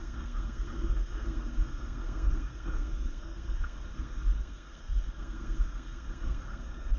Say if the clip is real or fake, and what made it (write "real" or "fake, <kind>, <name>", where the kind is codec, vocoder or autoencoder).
fake, codec, SNAC